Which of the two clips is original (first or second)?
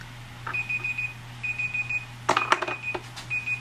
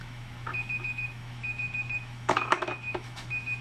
first